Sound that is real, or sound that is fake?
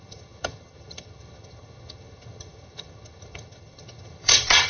fake